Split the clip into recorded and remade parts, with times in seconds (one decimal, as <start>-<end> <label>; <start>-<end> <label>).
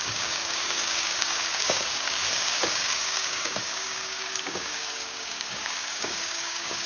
0.0-6.9 remade